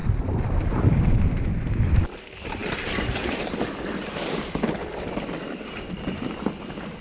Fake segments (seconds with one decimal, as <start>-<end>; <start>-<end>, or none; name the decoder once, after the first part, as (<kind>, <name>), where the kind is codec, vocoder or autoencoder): 0.0-7.0 (vocoder, BigVGAN v2)